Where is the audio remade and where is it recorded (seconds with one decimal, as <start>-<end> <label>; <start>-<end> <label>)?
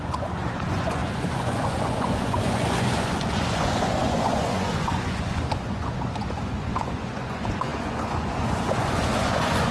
0.0-9.7 remade